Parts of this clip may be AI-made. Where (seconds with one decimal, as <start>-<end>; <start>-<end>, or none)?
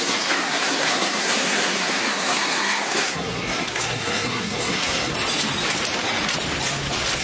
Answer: 0.0-5.1